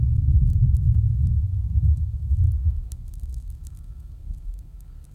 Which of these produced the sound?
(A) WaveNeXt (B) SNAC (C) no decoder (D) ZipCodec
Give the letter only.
B